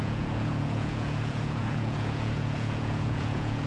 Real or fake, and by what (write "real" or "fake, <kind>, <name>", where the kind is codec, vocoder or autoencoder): fake, vocoder, Vocos